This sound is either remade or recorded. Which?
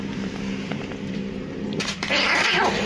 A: remade